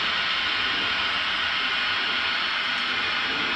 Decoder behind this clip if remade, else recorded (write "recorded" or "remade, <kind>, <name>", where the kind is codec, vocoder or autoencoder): recorded